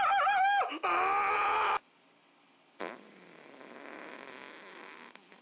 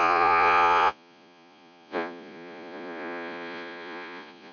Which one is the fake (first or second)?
second